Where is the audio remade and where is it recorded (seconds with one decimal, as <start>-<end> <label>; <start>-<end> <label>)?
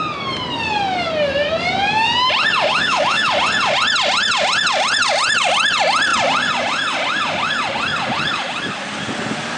0.0-2.7 recorded; 2.7-3.3 remade; 3.3-9.6 recorded